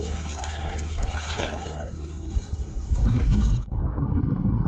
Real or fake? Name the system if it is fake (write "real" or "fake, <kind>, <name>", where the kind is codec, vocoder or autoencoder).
fake, codec, SNAC